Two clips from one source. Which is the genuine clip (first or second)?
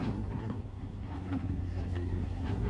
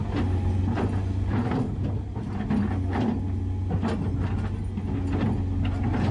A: second